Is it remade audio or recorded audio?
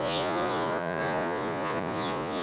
remade